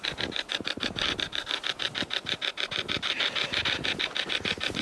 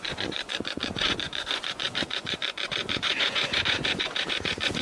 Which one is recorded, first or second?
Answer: first